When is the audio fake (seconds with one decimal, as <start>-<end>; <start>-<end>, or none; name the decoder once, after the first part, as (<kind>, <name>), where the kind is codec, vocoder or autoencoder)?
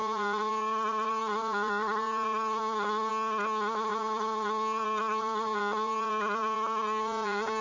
0.0-3.1 (vocoder, Vocos); 3.9-7.6